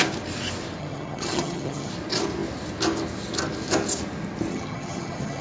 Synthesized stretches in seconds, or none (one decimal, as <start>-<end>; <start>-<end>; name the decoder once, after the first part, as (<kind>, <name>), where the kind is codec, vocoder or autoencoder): 0.8-1.9 (vocoder, HiFi-GAN); 4.5-5.4